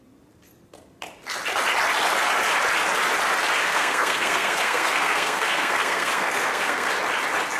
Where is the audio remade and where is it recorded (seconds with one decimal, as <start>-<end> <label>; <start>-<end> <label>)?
0.0-3.6 recorded; 3.6-6.9 remade; 6.9-7.6 recorded